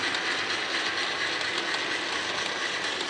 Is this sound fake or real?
real